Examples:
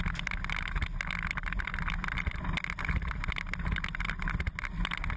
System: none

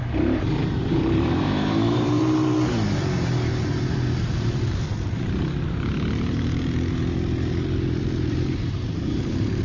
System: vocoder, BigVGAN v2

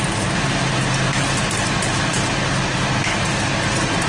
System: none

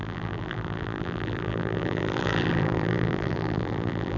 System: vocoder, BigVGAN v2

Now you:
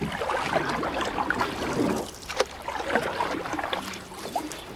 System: none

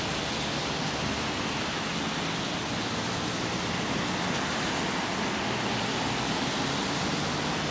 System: none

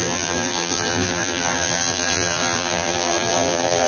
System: vocoder, BigVGAN v2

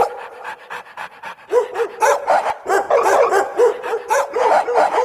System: vocoder, BigVGAN v2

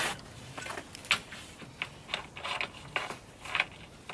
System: none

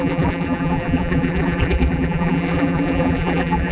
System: vocoder, BigVGAN v2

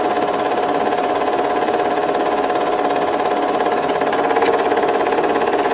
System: vocoder, BigVGAN v2